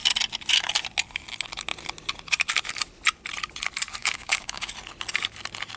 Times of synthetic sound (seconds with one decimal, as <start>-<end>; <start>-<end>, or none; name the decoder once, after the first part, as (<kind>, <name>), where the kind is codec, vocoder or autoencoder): 4.0-4.7 (codec, DAC)